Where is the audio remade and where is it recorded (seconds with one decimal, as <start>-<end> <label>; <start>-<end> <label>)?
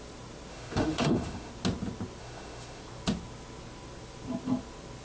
0.0-0.5 recorded; 0.5-1.5 remade; 1.5-2.2 recorded; 2.2-2.8 remade; 2.8-5.0 recorded